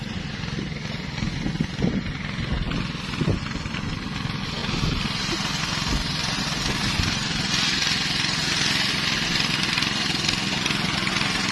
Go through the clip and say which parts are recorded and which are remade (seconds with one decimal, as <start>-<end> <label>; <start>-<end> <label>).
0.0-11.5 recorded